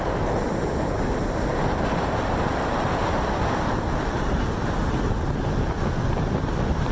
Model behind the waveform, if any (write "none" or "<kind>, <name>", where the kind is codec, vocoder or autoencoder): none